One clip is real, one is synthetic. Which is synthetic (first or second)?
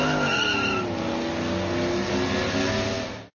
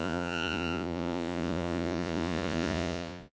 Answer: second